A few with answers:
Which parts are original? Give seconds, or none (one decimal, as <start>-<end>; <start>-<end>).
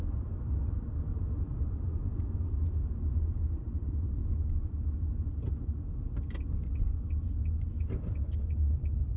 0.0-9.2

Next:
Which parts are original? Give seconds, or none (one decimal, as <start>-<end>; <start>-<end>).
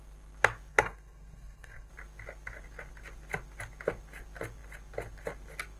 0.0-0.7; 1.9-5.8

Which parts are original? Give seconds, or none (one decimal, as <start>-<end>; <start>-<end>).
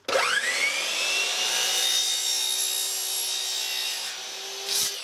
0.0-5.0